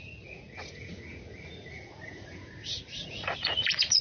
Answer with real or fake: fake